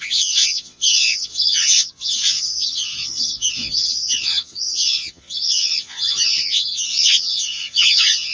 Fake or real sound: fake